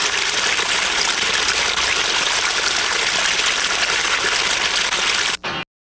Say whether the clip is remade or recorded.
recorded